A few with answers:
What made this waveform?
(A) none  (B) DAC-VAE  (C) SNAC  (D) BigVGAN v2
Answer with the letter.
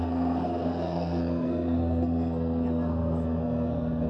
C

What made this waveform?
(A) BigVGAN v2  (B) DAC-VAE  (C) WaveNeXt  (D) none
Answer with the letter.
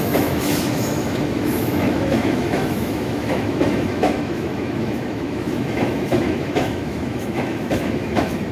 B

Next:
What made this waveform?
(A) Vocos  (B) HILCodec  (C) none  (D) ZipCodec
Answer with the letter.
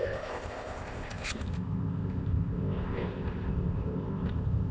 D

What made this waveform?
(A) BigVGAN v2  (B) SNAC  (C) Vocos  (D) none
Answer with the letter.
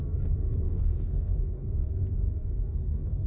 B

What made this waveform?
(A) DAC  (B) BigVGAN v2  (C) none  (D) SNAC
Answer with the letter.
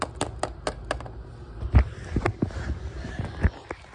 C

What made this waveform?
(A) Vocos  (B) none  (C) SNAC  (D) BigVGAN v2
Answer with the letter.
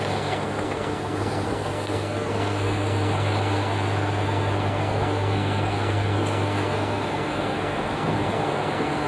C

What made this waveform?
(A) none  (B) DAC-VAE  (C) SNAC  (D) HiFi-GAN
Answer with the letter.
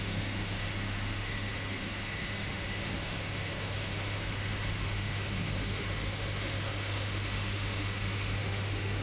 B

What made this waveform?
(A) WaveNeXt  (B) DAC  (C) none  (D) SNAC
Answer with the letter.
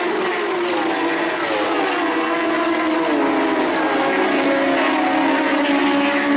C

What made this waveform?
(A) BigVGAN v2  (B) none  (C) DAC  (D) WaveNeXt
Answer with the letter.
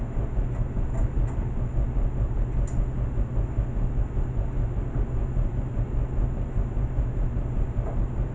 B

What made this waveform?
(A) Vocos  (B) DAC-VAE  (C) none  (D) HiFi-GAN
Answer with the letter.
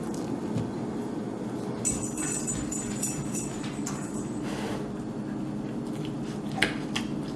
C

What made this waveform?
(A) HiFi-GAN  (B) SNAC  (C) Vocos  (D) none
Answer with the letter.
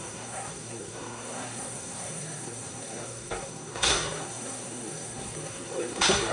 B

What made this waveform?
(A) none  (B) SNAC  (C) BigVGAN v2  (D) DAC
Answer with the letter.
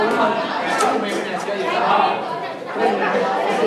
A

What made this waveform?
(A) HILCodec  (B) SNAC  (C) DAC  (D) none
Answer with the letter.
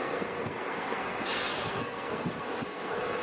B